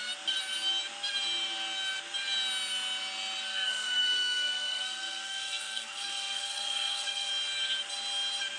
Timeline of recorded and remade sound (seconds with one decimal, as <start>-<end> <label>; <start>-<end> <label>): 0.0-3.5 recorded; 3.5-7.3 remade; 7.3-8.6 recorded